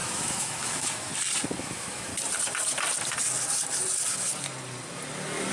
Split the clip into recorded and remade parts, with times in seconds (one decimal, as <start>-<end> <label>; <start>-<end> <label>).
0.0-1.1 remade; 1.1-1.6 recorded; 1.6-2.1 remade; 2.1-5.5 recorded